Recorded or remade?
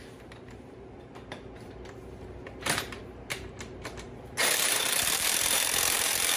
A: remade